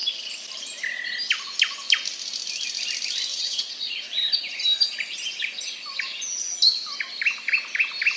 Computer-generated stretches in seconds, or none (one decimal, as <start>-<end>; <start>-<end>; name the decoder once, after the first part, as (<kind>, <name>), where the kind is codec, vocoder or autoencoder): 3.3-4.0 (vocoder, Vocos)